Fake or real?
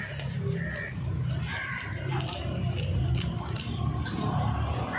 real